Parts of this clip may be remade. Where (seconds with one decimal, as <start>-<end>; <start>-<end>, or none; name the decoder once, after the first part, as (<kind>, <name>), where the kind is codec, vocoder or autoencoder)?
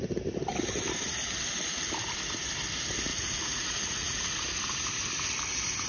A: 3.1-4.2 (vocoder, Vocos)